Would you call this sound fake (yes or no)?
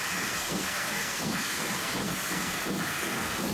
yes